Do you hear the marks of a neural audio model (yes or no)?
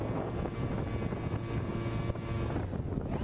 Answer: no